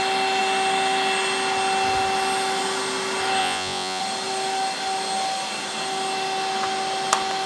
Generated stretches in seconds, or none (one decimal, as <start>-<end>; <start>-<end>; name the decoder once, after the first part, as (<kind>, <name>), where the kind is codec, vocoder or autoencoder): 3.4-4.0 (vocoder, Vocos)